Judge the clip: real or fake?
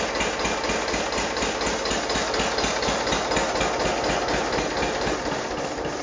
real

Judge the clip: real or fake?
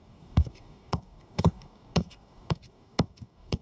fake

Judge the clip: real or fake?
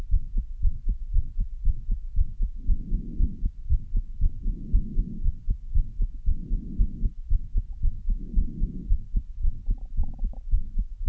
real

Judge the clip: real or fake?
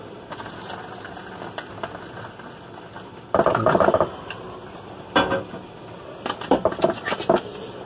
real